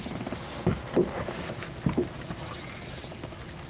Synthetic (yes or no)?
no